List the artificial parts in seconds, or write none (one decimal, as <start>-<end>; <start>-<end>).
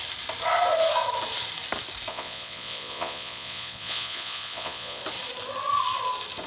2.1-5.0